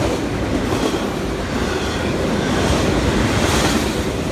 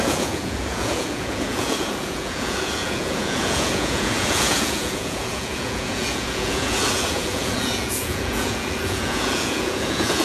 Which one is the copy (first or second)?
second